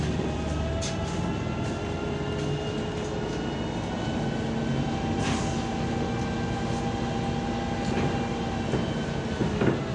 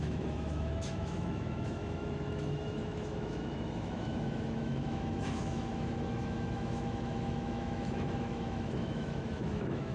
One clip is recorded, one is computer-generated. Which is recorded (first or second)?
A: first